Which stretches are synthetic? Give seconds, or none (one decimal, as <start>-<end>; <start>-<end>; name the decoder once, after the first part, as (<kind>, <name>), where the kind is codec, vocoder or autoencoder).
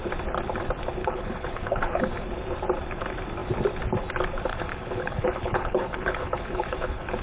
1.0-2.0 (codec, HILCodec); 4.5-7.2